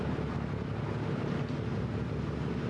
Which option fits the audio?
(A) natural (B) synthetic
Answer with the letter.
A